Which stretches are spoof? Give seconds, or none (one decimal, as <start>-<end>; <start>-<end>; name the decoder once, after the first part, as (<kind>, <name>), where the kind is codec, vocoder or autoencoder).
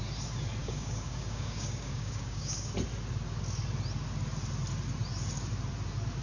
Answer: 0.6-2.7 (codec, DAC)